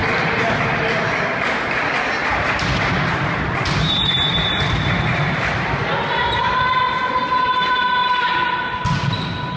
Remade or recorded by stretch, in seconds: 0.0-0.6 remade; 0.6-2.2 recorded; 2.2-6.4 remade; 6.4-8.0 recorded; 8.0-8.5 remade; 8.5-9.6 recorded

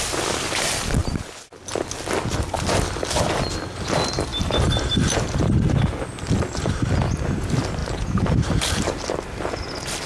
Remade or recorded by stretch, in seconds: 0.0-4.3 recorded; 4.3-5.8 remade; 5.8-7.8 recorded; 7.8-8.5 remade; 8.5-10.1 recorded

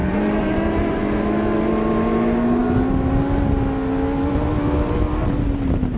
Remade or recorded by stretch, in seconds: 0.0-1.0 remade; 1.0-6.0 recorded

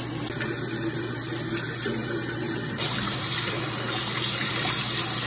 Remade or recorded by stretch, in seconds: 0.0-2.0 recorded; 2.0-4.5 remade; 4.5-5.3 recorded

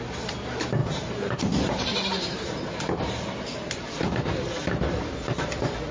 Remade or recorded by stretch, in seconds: 0.0-0.8 recorded; 0.8-4.3 remade; 4.3-5.9 recorded

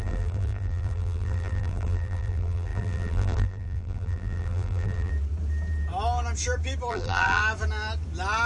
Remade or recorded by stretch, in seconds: 0.0-5.1 remade; 5.1-6.9 recorded; 6.9-7.4 remade; 7.4-8.5 recorded